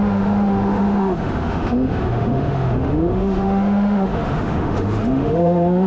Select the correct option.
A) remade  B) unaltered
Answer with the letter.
A